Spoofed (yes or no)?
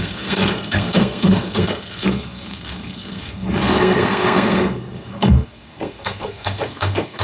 yes